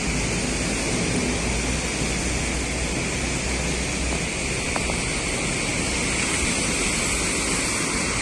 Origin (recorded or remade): recorded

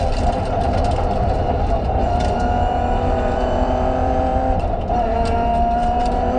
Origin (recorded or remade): remade